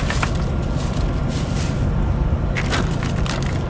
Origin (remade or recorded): recorded